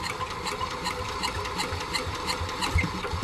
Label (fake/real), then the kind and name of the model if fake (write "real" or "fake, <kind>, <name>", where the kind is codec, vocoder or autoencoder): fake, vocoder, BigVGAN v2